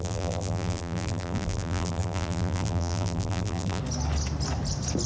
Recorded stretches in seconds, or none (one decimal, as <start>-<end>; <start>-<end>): 3.8-5.1